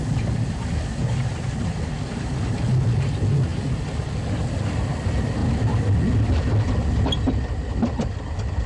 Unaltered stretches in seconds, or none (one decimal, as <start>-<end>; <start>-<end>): 0.0-8.7